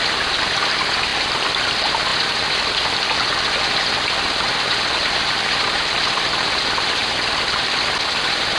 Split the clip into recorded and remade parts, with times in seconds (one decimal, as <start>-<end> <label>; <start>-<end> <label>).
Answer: 0.0-8.6 recorded